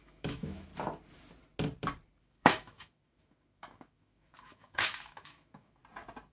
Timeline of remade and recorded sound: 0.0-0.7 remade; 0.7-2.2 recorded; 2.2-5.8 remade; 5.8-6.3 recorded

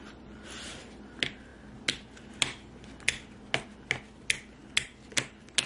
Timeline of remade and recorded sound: 0.0-5.7 recorded

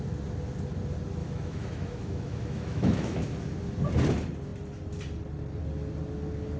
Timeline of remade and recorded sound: 0.0-1.2 recorded; 1.2-3.3 remade; 3.3-6.6 recorded

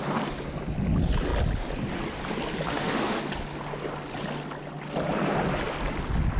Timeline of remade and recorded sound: 0.0-2.7 recorded; 2.7-3.2 remade; 3.2-6.4 recorded

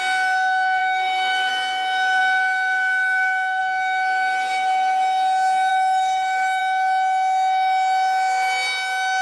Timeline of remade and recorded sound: 0.0-0.8 recorded; 0.8-1.5 remade; 1.5-5.7 recorded; 5.7-6.6 remade; 6.6-9.2 recorded

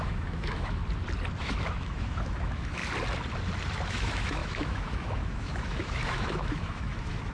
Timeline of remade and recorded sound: 0.0-0.8 remade; 0.8-1.4 recorded; 1.4-2.8 remade; 2.8-3.9 recorded; 3.9-7.3 remade

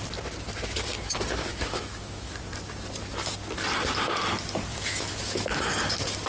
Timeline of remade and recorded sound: 0.0-1.5 recorded; 1.5-2.3 remade; 2.3-4.7 recorded; 4.7-5.7 remade; 5.7-6.3 recorded